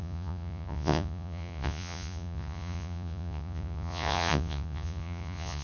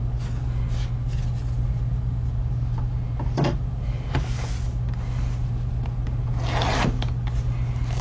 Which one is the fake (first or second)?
first